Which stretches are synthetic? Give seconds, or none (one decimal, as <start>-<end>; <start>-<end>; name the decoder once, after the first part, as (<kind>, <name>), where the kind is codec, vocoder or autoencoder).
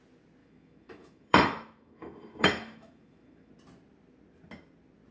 0.4-3.5 (autoencoder, DAC-VAE)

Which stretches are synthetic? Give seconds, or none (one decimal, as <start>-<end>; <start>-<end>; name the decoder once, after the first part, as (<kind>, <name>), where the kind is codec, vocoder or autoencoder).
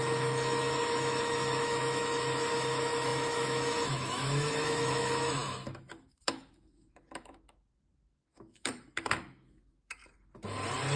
0.0-10.0 (autoencoder, DAC-VAE)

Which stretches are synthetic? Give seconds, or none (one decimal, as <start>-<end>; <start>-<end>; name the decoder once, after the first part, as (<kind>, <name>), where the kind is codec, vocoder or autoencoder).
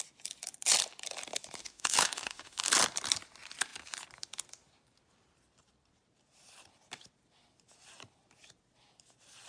1.6-2.6 (autoencoder, DAC-VAE)